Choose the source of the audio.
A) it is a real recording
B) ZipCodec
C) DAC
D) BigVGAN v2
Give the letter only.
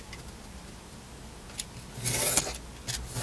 A